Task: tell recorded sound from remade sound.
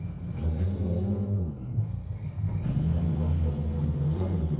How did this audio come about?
remade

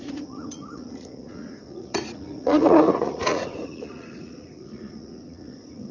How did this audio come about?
remade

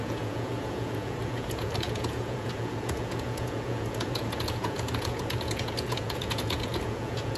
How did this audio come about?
remade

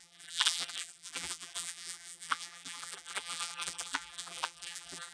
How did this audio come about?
remade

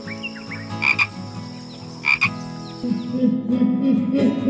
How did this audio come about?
recorded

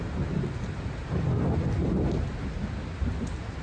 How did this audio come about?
recorded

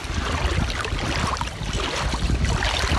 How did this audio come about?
recorded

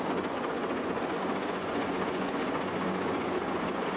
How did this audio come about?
remade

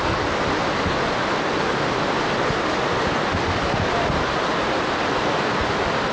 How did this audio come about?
recorded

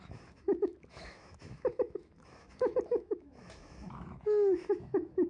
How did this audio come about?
remade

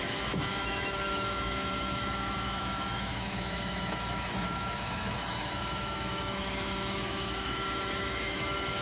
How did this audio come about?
remade